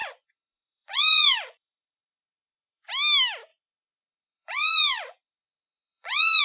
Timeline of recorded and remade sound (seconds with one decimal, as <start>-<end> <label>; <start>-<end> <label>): 0.0-2.9 remade; 2.9-3.5 recorded; 3.5-6.4 remade